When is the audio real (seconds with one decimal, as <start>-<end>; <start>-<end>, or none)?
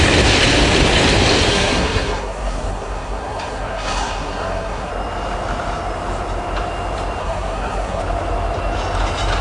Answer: 0.0-1.5; 4.9-7.2; 8.0-9.4